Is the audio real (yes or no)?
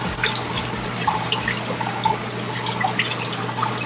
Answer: yes